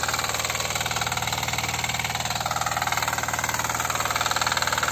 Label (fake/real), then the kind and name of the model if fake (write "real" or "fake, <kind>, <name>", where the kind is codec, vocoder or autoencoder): real